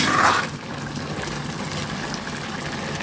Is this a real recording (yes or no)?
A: yes